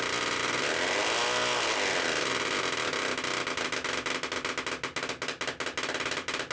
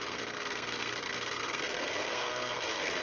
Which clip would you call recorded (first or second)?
first